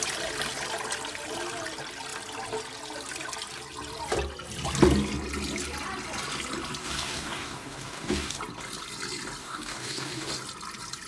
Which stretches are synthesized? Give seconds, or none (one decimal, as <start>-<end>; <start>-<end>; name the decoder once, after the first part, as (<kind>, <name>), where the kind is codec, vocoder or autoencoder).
6.8-8.4 (codec, DAC); 9.4-10.3